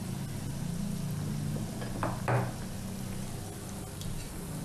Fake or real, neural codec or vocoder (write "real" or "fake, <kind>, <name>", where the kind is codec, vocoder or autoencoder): real